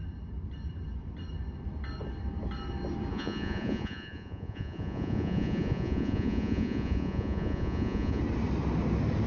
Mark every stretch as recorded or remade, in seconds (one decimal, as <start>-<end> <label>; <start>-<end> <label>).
0.0-3.1 recorded; 3.1-8.2 remade; 8.2-9.3 recorded